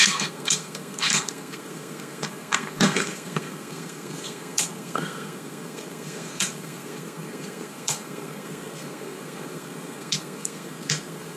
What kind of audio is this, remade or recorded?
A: remade